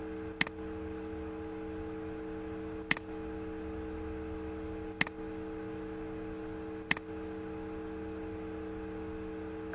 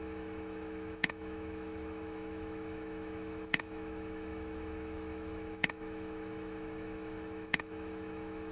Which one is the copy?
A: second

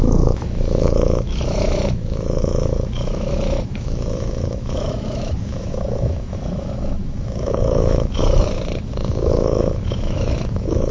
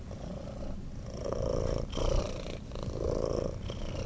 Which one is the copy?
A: first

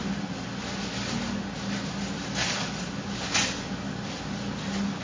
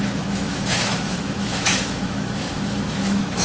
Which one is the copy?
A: second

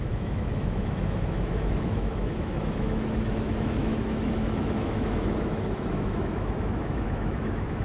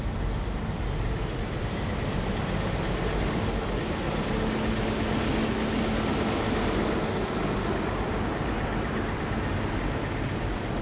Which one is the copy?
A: first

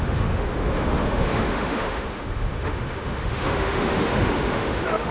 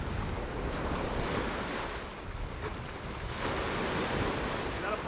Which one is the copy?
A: first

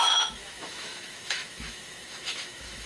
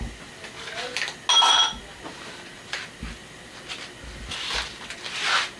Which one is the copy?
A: first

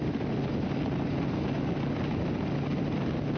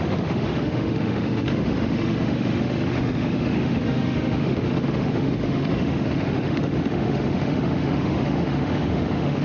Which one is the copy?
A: second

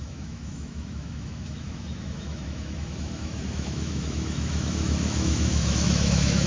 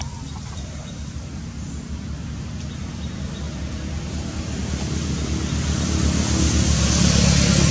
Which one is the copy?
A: first